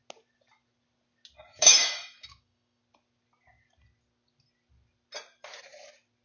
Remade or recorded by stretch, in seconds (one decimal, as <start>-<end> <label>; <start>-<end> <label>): 0.0-1.5 recorded; 1.5-2.8 remade; 2.8-6.2 recorded